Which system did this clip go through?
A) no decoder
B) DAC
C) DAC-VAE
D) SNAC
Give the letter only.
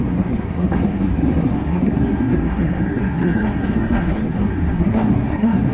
D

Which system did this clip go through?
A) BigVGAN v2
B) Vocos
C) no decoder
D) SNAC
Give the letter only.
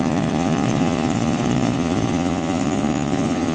B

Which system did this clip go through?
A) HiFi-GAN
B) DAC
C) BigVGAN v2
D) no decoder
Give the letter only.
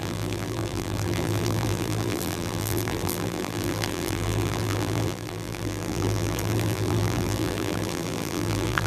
C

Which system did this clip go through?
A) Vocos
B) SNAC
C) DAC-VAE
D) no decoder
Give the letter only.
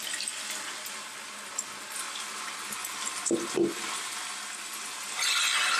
D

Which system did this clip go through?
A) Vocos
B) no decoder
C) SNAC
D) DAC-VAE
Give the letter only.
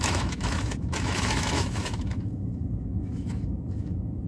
D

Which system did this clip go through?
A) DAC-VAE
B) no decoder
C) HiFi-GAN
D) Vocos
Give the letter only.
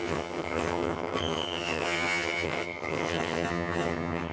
C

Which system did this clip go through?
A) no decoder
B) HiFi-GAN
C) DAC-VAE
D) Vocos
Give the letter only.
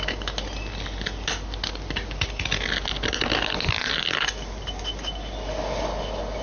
A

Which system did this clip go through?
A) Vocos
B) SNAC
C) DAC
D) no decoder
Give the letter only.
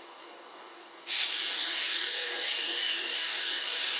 C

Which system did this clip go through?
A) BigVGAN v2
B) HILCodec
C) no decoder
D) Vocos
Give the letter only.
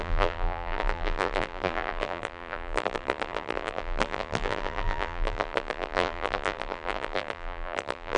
A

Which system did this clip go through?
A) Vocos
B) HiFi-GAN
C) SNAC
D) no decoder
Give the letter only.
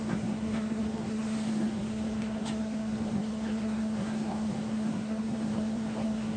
C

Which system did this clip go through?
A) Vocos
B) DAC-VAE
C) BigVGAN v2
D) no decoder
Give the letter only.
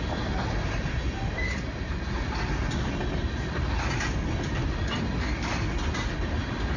D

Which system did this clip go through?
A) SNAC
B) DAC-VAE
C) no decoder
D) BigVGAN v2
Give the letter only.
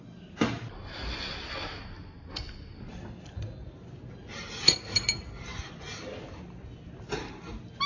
C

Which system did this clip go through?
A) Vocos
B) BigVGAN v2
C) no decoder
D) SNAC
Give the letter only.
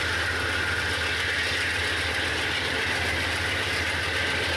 C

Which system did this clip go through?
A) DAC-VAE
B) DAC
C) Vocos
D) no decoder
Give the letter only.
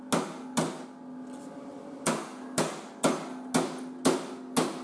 D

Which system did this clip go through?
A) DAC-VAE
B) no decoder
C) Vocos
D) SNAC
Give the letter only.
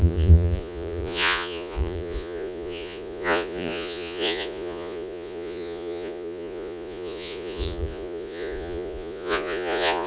C